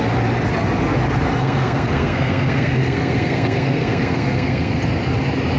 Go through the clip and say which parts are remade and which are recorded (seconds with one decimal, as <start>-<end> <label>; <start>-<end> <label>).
0.0-1.4 recorded; 1.4-4.8 remade; 4.8-5.6 recorded